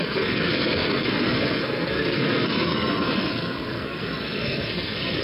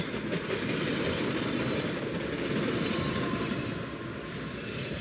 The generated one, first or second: first